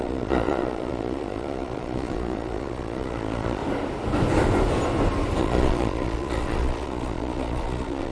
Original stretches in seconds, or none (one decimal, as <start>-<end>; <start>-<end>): 3.6-5.4